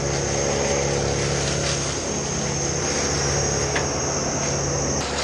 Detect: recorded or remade recorded